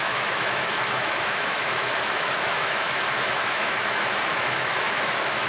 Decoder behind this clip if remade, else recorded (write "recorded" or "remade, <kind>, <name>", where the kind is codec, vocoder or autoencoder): remade, autoencoder, DAC-VAE